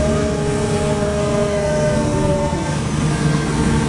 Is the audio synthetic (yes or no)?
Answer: yes